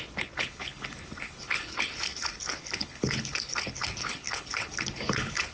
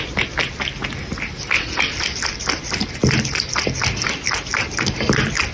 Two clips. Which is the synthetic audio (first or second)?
first